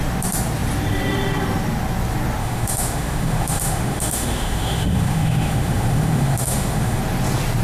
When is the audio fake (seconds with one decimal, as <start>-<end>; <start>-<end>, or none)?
2.4-7.0